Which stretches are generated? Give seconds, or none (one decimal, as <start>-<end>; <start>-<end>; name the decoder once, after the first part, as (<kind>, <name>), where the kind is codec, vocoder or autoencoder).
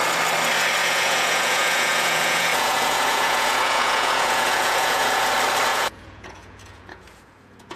0.8-5.3 (vocoder, Vocos); 5.7-7.8